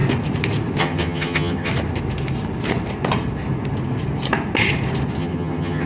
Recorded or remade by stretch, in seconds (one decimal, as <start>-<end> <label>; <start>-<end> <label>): 0.0-0.8 recorded; 0.8-1.7 remade; 1.7-5.2 recorded; 5.2-5.9 remade